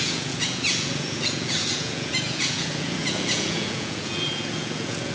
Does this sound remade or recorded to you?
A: remade